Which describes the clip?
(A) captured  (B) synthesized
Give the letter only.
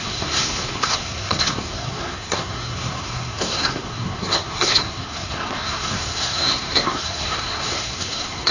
B